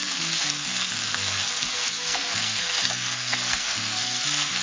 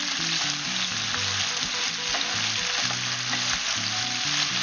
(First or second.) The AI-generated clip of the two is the first